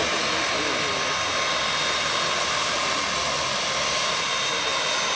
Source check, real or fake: real